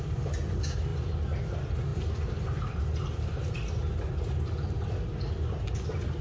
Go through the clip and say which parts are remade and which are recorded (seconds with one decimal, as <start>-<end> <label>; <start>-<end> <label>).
0.0-6.2 recorded